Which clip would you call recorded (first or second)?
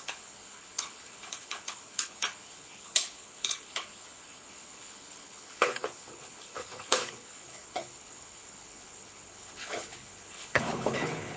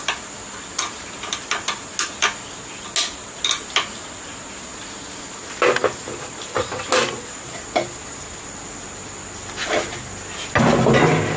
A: second